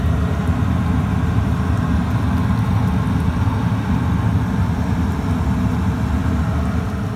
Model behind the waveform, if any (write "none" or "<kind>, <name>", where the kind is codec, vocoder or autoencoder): none